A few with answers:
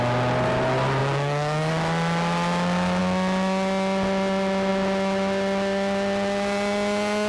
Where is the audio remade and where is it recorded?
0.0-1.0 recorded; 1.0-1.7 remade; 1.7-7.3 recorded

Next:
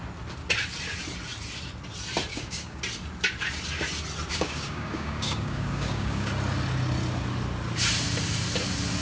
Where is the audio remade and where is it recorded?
0.0-2.3 recorded; 2.3-2.8 remade; 2.8-4.3 recorded; 4.3-6.3 remade; 6.3-9.0 recorded

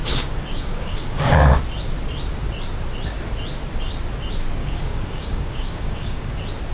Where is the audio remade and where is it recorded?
0.0-1.6 remade; 1.6-4.6 recorded; 4.6-6.3 remade; 6.3-6.7 recorded